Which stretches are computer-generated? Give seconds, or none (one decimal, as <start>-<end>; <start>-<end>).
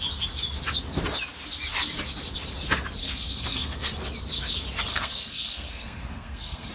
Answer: 3.0-3.9; 4.9-6.7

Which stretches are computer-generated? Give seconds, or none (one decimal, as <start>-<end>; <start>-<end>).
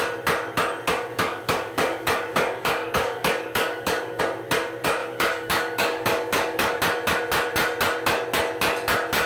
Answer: 1.1-4.2; 5.0-6.8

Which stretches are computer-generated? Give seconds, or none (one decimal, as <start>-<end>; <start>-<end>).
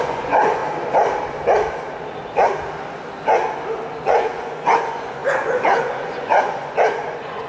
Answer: 0.0-0.6; 4.0-7.5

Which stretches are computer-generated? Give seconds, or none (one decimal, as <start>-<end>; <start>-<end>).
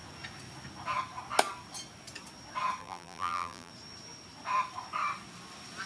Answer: 2.8-3.7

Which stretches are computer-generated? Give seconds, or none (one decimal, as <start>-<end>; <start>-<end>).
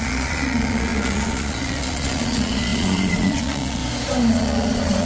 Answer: 0.0-3.8; 4.3-5.1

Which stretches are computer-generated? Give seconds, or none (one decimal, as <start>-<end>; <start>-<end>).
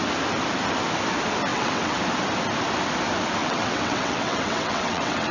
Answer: 1.5-2.0; 3.4-5.3